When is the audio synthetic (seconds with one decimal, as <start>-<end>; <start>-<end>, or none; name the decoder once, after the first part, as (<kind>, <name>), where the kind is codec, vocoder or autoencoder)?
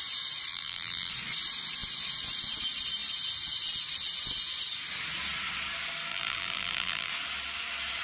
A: 0.5-1.1 (vocoder, BigVGAN v2); 6.1-7.1